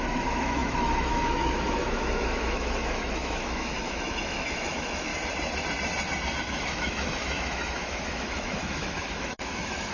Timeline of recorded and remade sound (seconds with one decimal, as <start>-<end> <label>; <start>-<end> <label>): 0.0-5.1 remade; 5.1-6.4 recorded; 6.4-9.9 remade